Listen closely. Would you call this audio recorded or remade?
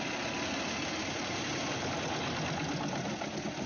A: recorded